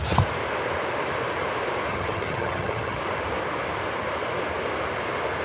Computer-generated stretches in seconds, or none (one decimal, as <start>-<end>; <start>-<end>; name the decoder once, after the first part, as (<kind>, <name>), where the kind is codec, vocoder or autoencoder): 1.9-3.0 (vocoder, HiFi-GAN)